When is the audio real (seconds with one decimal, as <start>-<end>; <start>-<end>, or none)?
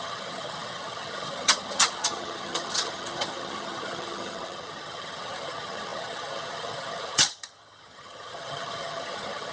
none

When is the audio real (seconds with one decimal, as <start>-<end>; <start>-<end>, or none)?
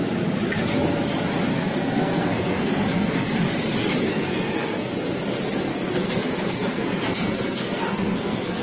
0.0-1.5; 3.3-4.1; 4.9-5.7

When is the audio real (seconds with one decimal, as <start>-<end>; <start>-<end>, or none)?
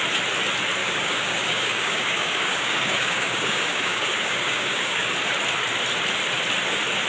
0.0-0.8; 5.1-7.1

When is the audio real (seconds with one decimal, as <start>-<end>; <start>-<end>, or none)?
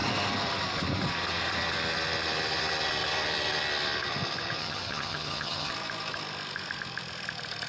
0.0-4.6; 5.7-7.7